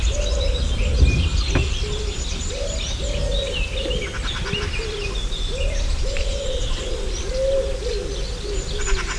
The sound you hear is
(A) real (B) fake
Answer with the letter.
A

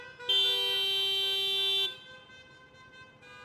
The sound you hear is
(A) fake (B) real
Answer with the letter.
B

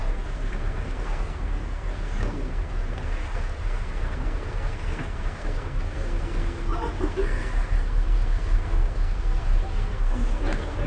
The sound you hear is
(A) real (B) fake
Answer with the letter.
B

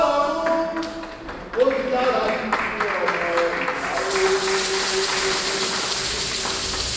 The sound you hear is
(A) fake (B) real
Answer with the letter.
B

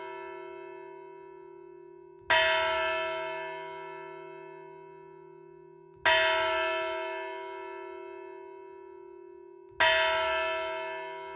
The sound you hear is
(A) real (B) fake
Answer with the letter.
A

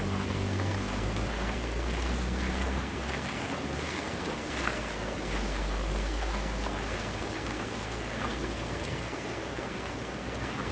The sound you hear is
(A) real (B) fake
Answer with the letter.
B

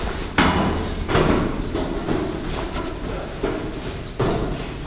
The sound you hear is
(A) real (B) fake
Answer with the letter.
A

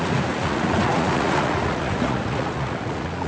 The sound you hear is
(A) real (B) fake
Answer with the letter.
B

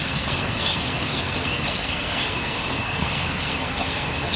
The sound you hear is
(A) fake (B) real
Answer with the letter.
A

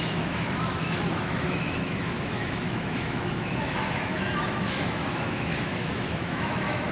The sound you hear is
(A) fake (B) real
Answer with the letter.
A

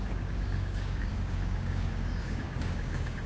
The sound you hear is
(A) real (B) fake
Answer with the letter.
B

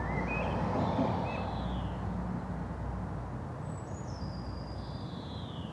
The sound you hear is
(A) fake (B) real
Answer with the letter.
B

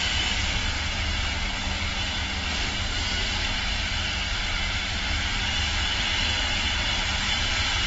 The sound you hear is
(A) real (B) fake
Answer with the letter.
A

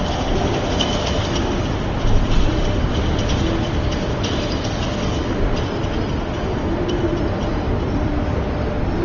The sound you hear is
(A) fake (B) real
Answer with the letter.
B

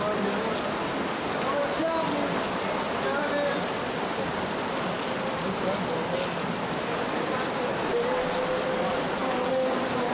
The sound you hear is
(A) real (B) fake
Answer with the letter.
A